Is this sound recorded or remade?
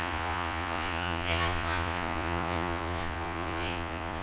remade